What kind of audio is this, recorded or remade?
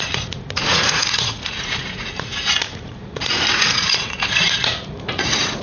remade